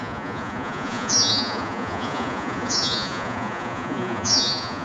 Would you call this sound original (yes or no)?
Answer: no